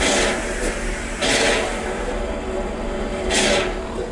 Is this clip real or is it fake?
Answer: real